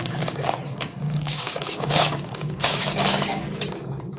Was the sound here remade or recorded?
remade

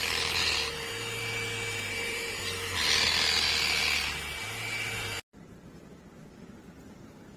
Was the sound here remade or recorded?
recorded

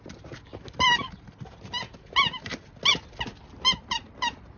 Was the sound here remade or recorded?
recorded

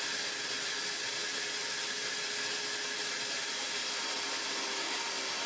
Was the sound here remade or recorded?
recorded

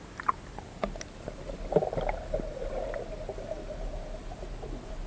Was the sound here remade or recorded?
recorded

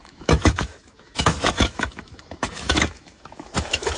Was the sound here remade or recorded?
remade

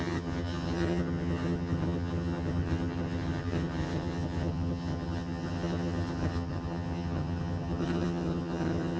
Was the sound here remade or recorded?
remade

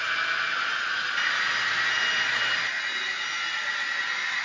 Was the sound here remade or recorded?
recorded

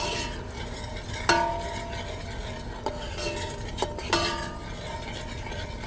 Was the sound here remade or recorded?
recorded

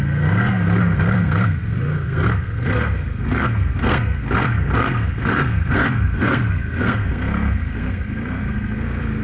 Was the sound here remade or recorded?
remade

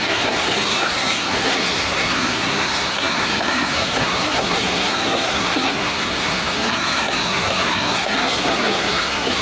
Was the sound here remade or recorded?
remade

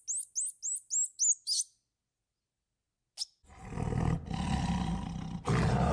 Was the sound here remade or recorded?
recorded